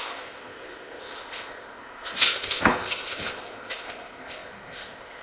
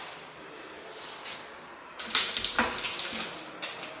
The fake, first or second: first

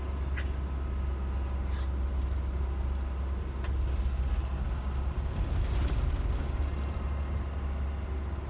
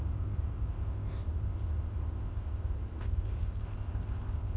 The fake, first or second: second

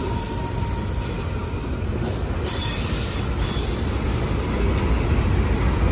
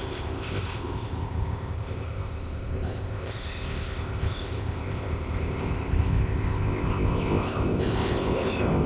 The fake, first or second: second